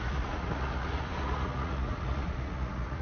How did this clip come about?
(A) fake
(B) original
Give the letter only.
A